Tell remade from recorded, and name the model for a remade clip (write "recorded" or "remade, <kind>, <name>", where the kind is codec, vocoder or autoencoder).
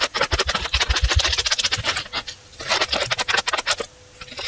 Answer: recorded